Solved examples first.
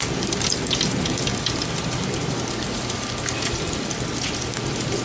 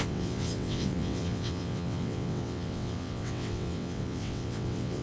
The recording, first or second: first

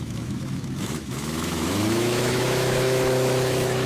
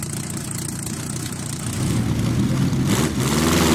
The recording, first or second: second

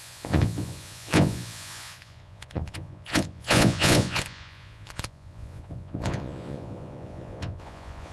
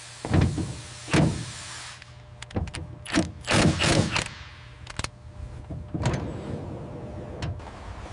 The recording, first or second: second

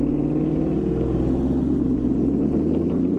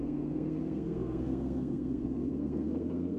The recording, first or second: first